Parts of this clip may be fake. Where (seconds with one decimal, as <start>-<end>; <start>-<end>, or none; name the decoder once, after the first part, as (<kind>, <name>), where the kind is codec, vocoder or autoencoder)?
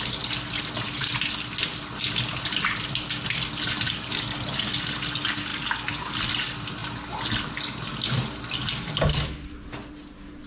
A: none